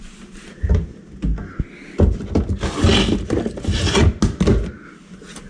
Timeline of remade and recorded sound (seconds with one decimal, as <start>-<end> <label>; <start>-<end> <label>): 0.0-5.5 recorded

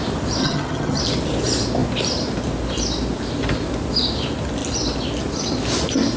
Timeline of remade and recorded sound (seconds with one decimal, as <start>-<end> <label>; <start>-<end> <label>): 0.0-0.4 recorded; 0.4-1.0 remade; 1.0-6.2 recorded

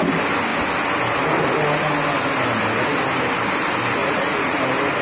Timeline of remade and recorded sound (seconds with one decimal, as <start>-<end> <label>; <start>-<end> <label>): 0.0-4.0 recorded; 4.0-4.6 remade; 4.6-5.0 recorded

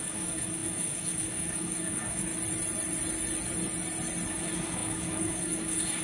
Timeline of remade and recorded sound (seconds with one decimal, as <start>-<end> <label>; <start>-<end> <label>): 0.0-2.3 remade; 2.3-4.3 recorded; 4.3-6.0 remade